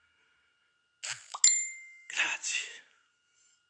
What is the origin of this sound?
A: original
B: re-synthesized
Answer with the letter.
A